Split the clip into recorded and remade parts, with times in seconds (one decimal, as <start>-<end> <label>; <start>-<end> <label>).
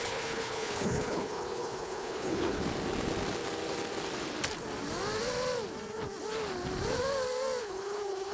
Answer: 0.0-2.6 remade; 2.6-7.6 recorded; 7.6-8.3 remade